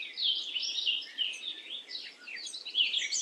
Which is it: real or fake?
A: real